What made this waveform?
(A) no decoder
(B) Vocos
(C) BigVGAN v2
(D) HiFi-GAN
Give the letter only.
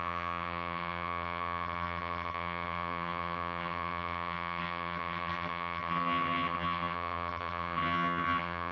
D